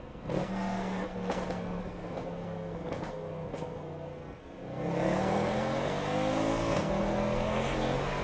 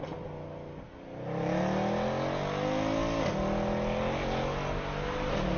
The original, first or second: second